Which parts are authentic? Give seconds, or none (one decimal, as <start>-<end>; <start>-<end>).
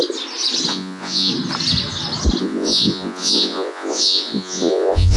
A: 0.0-0.7; 1.3-2.4